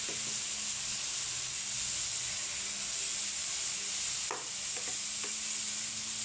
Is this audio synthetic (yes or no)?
no